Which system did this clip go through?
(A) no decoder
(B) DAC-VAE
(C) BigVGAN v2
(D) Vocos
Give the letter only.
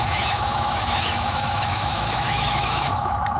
B